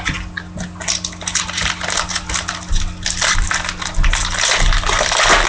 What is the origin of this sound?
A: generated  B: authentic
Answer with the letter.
B